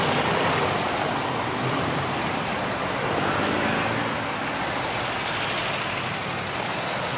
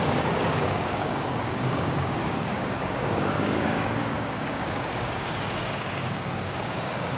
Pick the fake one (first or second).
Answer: second